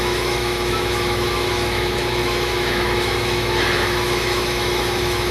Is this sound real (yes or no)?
no